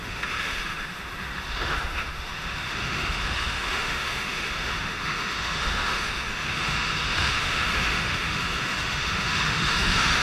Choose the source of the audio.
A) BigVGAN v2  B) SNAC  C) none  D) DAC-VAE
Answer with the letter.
D